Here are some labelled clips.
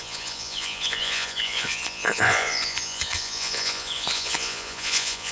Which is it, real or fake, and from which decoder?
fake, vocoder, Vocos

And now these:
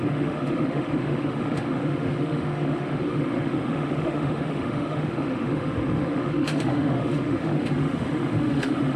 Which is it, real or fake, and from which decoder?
fake, autoencoder, DAC-VAE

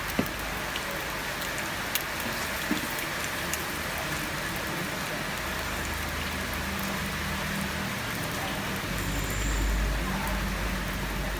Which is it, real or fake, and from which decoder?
real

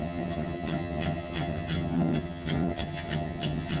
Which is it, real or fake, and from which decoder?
fake, vocoder, HiFi-GAN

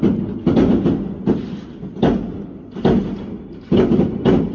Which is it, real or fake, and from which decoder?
real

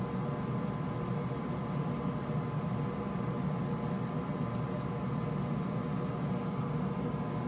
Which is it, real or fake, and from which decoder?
real